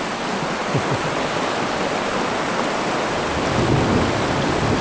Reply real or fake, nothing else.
real